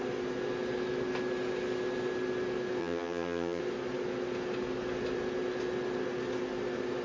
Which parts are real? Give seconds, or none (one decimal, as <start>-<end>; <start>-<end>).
0.0-2.8; 3.6-7.0